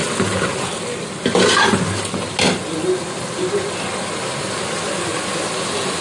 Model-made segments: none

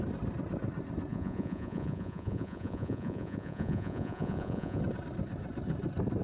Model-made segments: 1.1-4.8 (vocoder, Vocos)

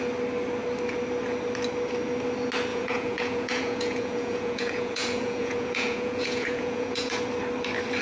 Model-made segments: 2.7-7.2 (vocoder, Vocos)

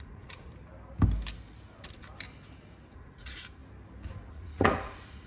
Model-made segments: 0.0-0.5 (vocoder, Vocos); 2.9-3.6; 4.3-5.3

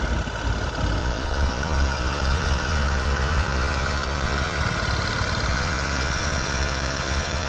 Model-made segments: 1.0-4.6 (vocoder, Vocos); 5.5-7.5